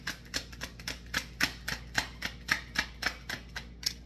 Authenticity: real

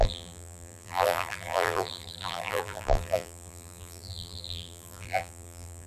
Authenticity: fake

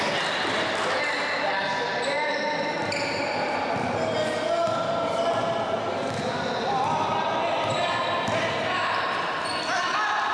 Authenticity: real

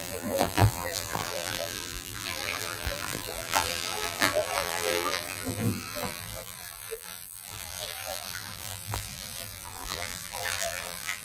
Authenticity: fake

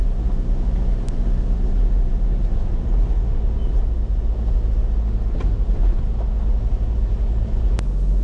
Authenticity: real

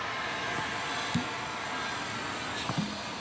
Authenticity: real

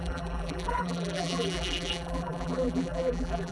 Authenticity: fake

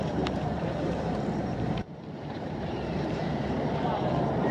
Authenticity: fake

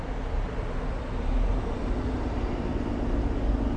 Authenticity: real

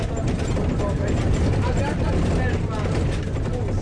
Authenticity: real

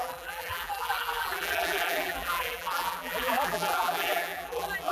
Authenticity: fake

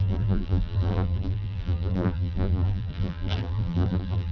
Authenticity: fake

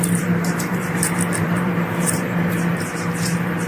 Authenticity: fake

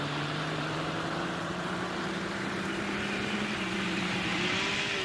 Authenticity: fake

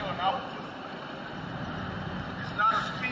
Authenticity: real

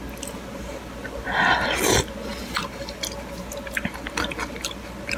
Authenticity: real